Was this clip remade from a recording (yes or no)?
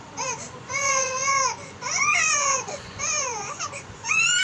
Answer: yes